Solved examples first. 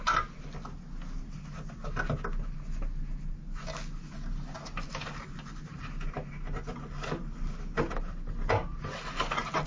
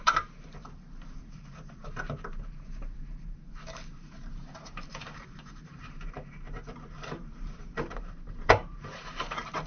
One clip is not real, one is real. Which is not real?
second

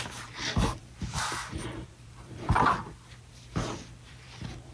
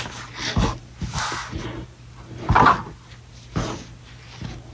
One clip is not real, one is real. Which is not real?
first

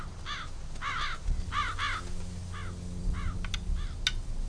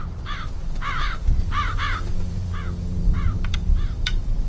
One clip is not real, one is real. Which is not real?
second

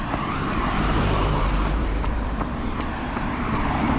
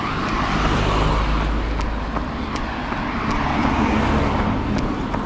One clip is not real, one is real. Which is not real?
first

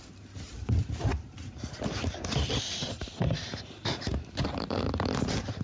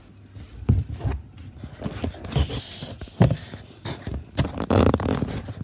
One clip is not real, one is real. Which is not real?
first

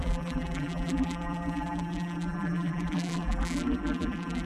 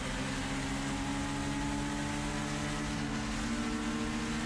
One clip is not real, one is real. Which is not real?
first